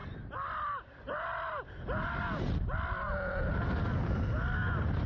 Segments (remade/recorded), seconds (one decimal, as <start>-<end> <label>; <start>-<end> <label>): 0.0-5.1 recorded